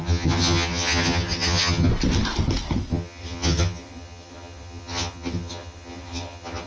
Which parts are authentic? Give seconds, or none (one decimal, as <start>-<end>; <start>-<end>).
1.9-2.9